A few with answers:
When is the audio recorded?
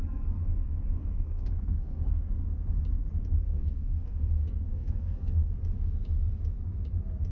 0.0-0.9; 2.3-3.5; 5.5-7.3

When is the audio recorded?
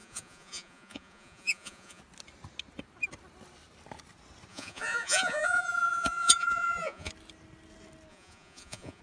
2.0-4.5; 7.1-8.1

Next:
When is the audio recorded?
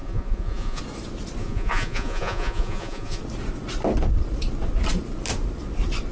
0.8-1.4; 3.2-6.1